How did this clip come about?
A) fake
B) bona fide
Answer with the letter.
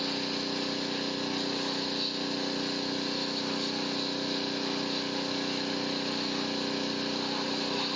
B